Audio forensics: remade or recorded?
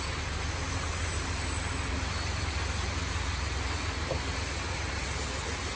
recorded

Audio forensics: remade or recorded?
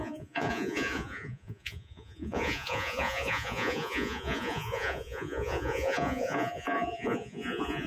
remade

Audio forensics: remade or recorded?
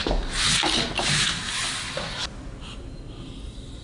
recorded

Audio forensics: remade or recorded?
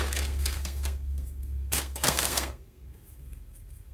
remade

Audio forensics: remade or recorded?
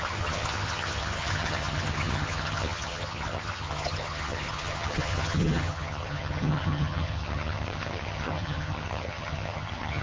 remade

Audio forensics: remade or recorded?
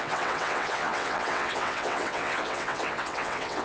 remade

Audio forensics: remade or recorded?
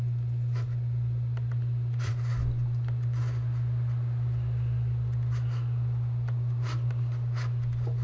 recorded